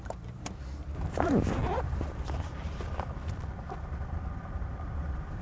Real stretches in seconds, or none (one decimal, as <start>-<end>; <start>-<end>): 1.6-4.8